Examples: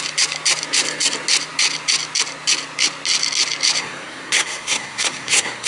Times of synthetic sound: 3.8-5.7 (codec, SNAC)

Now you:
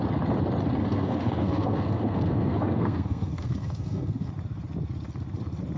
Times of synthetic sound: 0.8-4.3 (codec, SNAC)

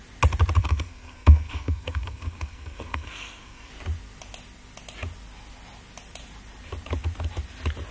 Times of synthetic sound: 0.6-3.7 (codec, SNAC)

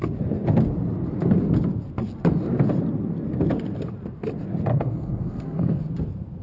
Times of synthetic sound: 4.7-5.8 (codec, SNAC)